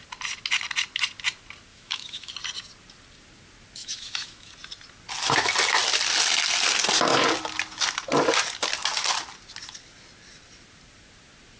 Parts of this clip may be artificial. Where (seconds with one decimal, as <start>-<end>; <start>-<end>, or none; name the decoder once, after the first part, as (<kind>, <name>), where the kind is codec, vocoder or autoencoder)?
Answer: 1.7-2.3 (autoencoder, DAC-VAE); 3.8-4.5